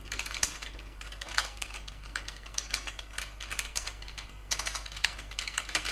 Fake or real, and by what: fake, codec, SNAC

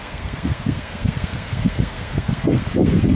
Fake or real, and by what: fake, codec, SNAC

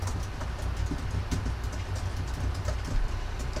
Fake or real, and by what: real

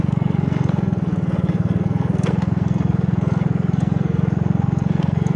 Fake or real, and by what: fake, codec, SNAC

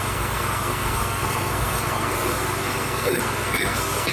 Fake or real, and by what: fake, codec, SNAC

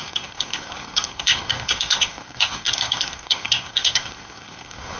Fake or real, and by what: fake, codec, SNAC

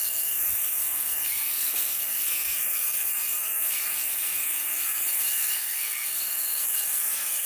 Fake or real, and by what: fake, codec, SNAC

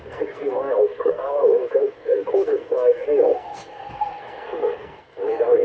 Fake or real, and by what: fake, codec, SNAC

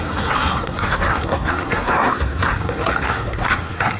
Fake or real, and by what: fake, codec, SNAC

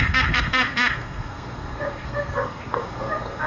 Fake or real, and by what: fake, codec, SNAC